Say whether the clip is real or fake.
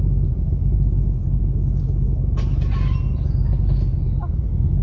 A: real